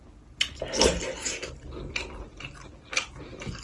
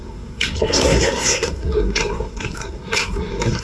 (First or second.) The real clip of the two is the first